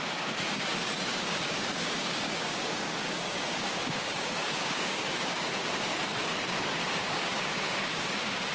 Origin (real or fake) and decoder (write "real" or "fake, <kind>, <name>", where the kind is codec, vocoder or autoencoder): fake, codec, DAC